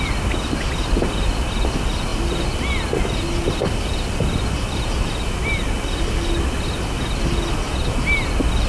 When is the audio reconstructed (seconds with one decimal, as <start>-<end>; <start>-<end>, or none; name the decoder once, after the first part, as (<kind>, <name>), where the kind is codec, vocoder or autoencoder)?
none